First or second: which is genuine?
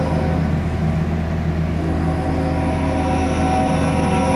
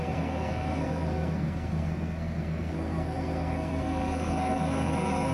first